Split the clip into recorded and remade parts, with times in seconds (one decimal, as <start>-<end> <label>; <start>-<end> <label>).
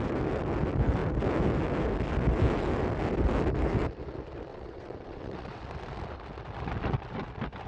0.0-4.5 recorded; 4.5-5.6 remade; 5.6-7.7 recorded